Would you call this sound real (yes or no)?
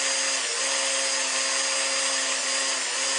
yes